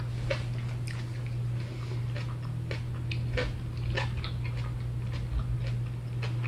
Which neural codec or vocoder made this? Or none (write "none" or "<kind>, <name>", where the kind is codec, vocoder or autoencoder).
none